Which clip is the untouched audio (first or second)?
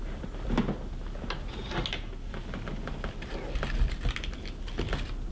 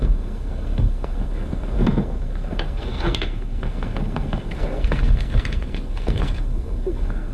first